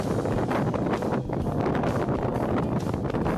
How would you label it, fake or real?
real